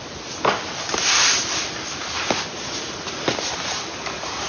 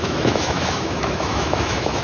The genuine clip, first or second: first